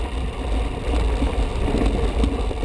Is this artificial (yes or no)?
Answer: no